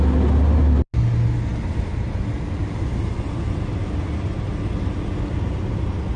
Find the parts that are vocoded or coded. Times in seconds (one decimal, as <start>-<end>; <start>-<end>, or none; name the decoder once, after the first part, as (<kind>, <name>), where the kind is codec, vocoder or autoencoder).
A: none